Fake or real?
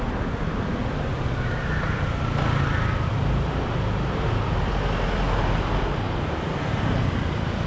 real